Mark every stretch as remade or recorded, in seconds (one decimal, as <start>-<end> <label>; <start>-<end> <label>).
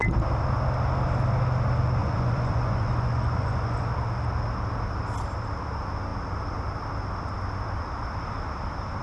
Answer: 0.0-2.0 recorded; 2.0-3.9 remade; 3.9-9.0 recorded